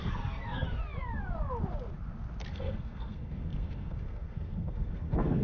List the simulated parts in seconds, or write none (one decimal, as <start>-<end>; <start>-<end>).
0.0-0.8; 2.5-5.4